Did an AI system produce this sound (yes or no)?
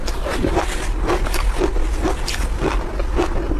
no